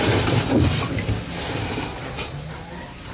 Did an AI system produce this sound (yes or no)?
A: no